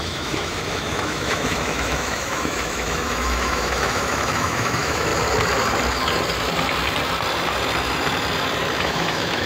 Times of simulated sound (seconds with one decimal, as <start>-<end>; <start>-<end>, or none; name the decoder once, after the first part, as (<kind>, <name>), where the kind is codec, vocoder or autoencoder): 0.0-5.1 (autoencoder, DAC-VAE); 8.8-9.5